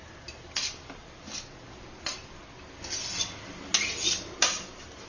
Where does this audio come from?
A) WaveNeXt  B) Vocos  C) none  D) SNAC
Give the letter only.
C